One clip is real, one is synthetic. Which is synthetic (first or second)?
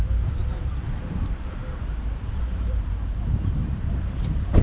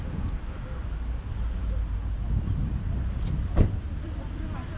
first